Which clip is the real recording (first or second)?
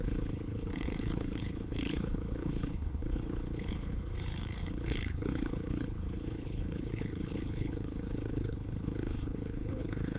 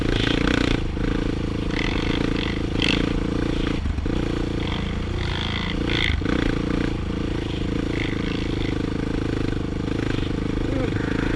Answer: second